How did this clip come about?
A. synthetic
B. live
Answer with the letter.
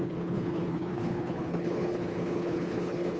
A